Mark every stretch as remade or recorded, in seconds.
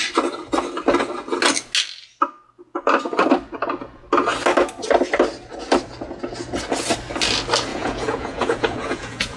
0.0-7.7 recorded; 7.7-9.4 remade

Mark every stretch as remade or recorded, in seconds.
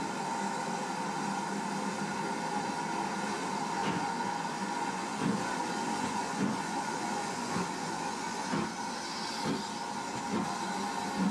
0.0-3.8 recorded; 3.8-8.7 remade; 8.7-11.3 recorded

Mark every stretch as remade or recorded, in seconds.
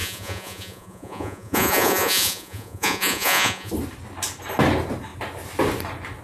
0.0-3.7 remade; 3.7-6.2 recorded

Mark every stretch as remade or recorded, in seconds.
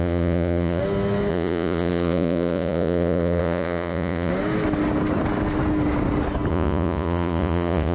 0.0-0.8 remade; 0.8-1.3 recorded; 1.3-4.3 remade; 4.3-6.5 recorded; 6.5-7.9 remade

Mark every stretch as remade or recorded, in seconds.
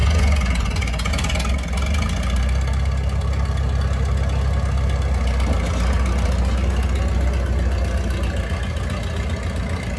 0.0-1.1 remade; 1.1-10.0 recorded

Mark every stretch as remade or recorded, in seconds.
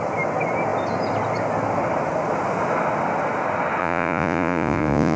0.0-3.8 recorded; 3.8-5.2 remade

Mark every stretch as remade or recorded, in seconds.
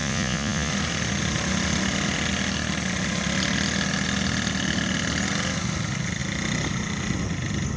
0.0-0.7 remade; 0.7-7.8 recorded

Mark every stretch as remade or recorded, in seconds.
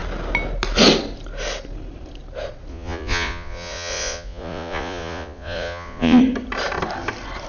0.0-2.7 recorded; 2.7-6.2 remade; 6.2-7.5 recorded